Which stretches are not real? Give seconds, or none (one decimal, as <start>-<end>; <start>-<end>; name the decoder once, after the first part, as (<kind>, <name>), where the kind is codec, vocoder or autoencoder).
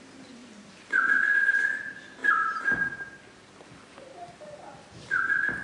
0.4-1.0 (vocoder, BigVGAN v2); 2.2-2.9